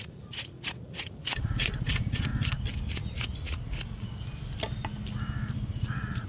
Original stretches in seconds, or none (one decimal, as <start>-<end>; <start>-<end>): 2.3-2.9; 4.1-5.7